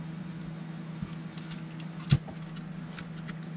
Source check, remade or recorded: recorded